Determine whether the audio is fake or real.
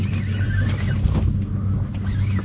real